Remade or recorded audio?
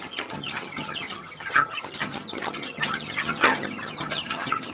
remade